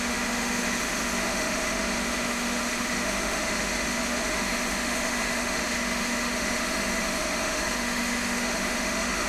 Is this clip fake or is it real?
fake